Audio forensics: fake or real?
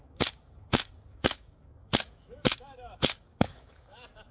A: fake